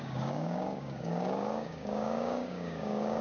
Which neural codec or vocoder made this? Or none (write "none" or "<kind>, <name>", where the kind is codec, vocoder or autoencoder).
codec, DAC